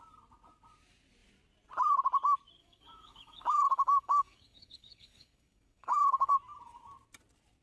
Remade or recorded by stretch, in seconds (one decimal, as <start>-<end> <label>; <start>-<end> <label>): 0.0-2.6 recorded; 2.6-6.3 remade; 6.3-7.6 recorded